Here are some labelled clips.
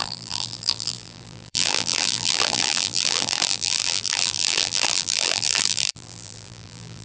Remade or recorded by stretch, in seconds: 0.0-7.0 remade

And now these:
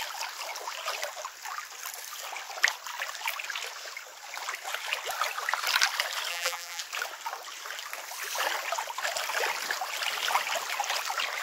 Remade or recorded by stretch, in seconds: 0.0-6.3 recorded; 6.3-6.8 remade; 6.8-11.4 recorded

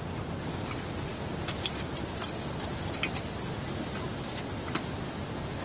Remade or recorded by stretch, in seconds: 0.0-5.6 recorded

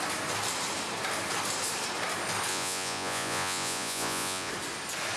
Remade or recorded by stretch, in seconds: 0.0-2.5 recorded; 2.5-4.5 remade; 4.5-5.2 recorded

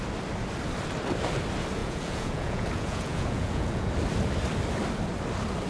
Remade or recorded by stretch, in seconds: 0.0-1.8 recorded; 1.8-3.9 remade; 3.9-5.7 recorded

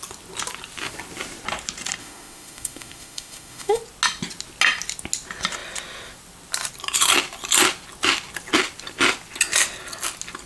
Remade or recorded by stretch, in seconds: 0.0-2.0 recorded; 2.0-3.8 remade; 3.8-10.5 recorded